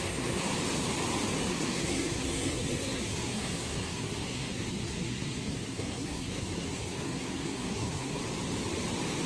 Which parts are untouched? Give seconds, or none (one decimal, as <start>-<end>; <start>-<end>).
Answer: 0.5-1.4; 8.2-9.3